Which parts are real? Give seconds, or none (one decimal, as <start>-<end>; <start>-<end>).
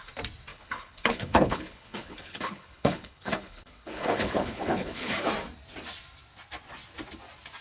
0.0-0.5; 5.1-7.6